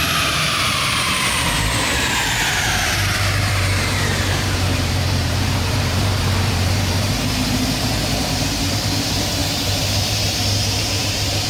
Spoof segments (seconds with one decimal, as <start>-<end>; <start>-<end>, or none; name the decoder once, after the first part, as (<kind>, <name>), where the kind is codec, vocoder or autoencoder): 0.0-11.5 (vocoder, BigVGAN v2)